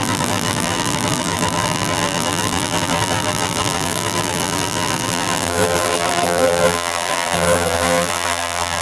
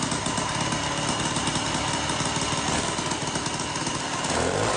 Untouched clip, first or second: second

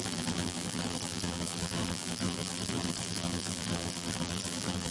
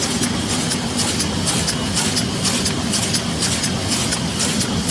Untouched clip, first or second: second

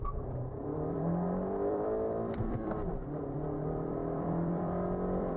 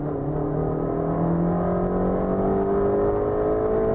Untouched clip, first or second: second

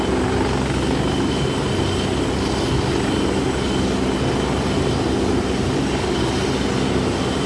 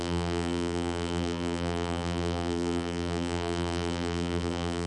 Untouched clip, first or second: first